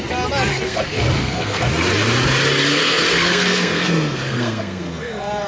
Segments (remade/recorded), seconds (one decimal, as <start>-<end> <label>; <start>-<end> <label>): 0.0-0.5 recorded; 0.5-1.7 remade; 1.7-2.7 recorded; 2.7-5.5 remade